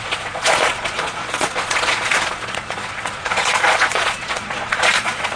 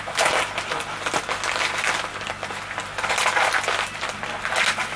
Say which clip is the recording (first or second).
second